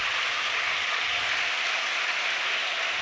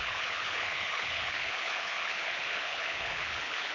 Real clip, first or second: first